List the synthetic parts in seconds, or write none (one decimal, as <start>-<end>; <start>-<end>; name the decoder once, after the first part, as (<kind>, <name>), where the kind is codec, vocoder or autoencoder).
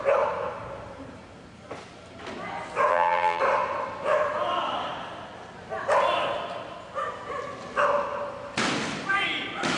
2.9-3.4 (vocoder, BigVGAN v2)